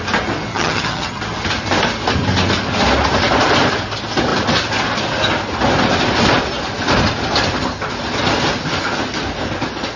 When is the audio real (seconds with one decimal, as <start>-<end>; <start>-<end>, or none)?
0.0-0.5; 1.2-10.0